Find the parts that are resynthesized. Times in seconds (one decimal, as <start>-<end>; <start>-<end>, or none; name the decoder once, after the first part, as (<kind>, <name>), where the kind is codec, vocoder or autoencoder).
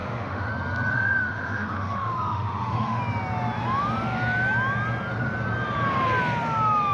0.0-0.5 (autoencoder, DAC-VAE); 0.9-3.0